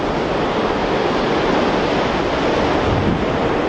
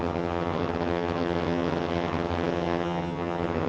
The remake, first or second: second